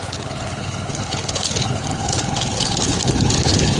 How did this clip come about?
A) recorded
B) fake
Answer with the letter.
B